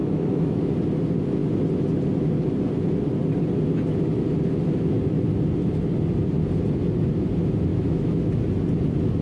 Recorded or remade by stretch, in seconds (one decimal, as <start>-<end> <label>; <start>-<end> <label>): 0.0-0.7 remade; 0.7-7.7 recorded; 7.7-8.4 remade; 8.4-9.2 recorded